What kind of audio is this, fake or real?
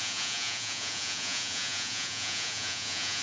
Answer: fake